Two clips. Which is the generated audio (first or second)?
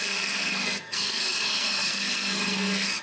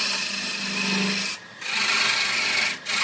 first